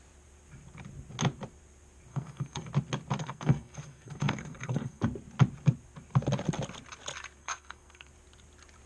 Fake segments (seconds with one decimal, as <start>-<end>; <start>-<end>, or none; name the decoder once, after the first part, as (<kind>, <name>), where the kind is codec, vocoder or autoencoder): 2.1-2.7 (codec, SNAC); 3.2-5.0; 7.4-8.1